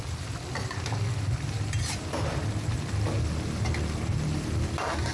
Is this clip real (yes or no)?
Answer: yes